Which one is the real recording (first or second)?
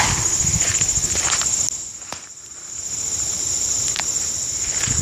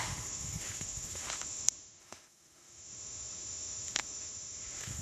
first